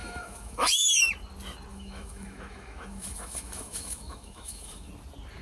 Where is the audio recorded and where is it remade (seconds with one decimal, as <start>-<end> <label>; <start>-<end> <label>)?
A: 0.0-1.0 remade; 1.0-1.7 recorded; 1.7-4.9 remade; 4.9-5.4 recorded